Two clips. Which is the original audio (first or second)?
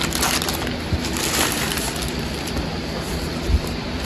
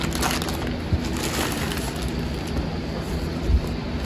second